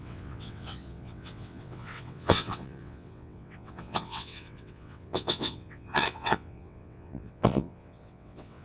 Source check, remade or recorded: remade